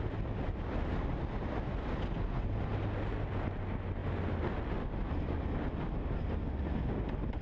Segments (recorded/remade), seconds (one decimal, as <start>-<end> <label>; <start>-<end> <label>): 0.0-7.4 recorded